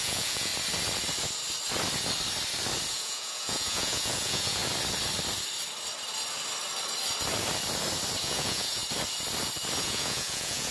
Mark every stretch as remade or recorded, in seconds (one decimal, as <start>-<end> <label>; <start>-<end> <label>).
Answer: 0.0-0.5 remade; 0.5-2.9 recorded; 2.9-4.6 remade; 4.6-8.2 recorded; 8.2-8.8 remade; 8.8-9.8 recorded; 9.8-10.7 remade